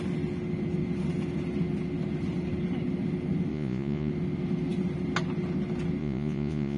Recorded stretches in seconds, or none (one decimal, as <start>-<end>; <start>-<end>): 0.0-3.5; 4.1-6.0